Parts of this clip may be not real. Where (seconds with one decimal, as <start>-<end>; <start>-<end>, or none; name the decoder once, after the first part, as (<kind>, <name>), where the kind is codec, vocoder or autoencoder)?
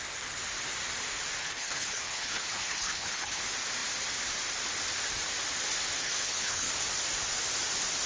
1.4-3.4 (codec, HILCodec); 6.0-6.7